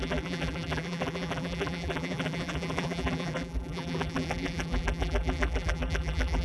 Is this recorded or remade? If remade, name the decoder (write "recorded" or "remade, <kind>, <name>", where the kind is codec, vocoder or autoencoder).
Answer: remade, vocoder, BigVGAN v2